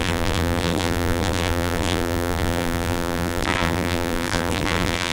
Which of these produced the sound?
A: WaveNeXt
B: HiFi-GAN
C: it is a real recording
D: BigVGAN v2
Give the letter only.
D